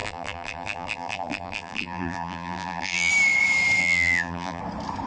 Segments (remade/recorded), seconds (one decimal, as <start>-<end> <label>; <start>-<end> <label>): 0.0-3.1 remade; 3.1-3.8 recorded; 3.8-4.6 remade; 4.6-5.1 recorded